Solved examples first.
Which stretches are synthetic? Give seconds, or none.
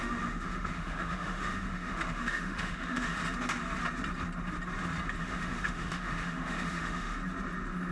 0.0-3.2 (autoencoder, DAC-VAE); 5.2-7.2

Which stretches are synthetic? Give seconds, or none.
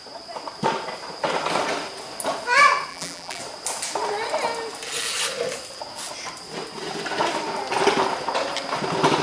2.9-3.4 (vocoder, BigVGAN v2)